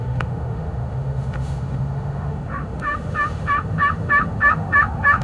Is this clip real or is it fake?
fake